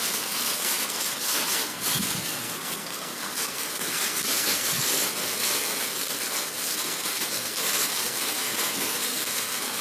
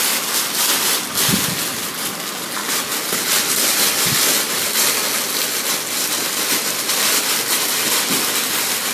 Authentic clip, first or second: second